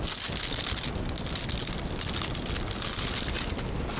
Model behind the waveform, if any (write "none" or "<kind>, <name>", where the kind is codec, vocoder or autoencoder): none